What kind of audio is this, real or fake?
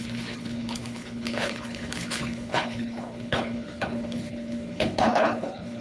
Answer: fake